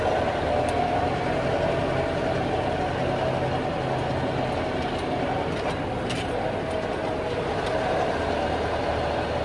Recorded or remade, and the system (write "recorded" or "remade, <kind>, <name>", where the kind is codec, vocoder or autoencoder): recorded